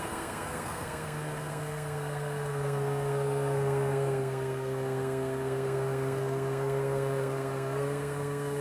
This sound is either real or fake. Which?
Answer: fake